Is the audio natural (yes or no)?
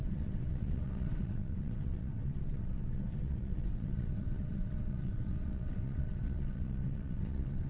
no